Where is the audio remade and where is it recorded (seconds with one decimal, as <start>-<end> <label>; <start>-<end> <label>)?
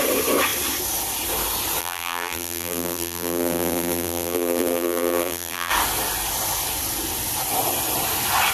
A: 0.0-1.8 recorded; 1.8-5.7 remade; 5.7-8.5 recorded